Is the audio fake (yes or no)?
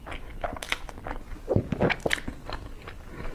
no